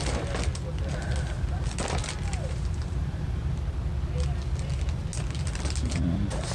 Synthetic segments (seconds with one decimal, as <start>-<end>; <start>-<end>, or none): 2.3-3.8